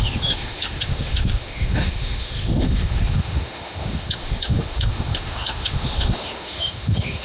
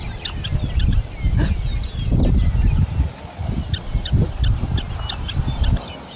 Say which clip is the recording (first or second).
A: second